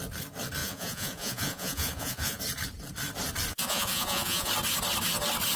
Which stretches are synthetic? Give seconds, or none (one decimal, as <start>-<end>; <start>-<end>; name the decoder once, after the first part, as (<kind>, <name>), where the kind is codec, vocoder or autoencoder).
0.6-2.4 (vocoder, Vocos); 3.5-4.5